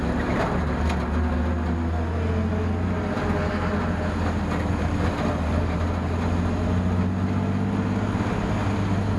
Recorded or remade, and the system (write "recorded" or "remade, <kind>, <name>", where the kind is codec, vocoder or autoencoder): recorded